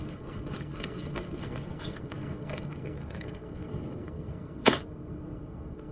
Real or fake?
fake